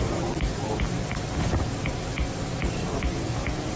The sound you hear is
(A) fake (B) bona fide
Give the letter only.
A